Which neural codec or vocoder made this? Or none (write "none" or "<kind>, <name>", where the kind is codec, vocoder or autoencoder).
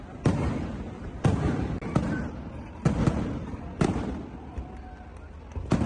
none